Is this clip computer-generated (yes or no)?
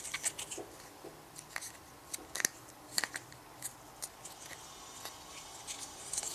no